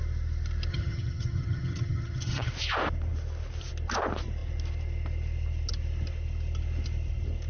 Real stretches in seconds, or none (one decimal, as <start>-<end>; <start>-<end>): 0.0-0.7; 2.5-7.5